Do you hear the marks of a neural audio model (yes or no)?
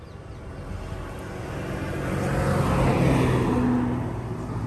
no